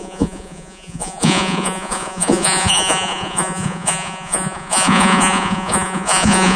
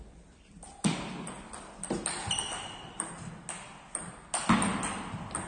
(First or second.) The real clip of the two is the second